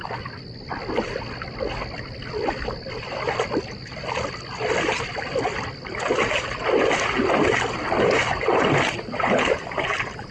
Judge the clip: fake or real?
real